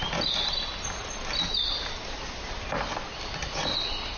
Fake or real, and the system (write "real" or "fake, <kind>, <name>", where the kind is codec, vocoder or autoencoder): real